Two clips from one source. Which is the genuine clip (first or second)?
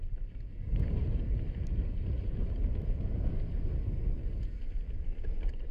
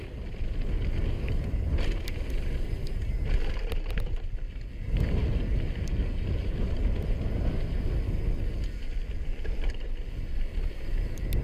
second